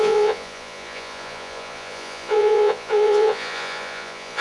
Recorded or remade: remade